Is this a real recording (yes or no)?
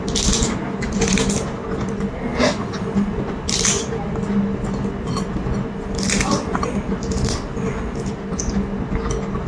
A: yes